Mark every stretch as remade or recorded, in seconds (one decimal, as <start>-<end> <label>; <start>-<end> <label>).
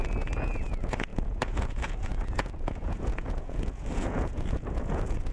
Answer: 0.0-5.3 remade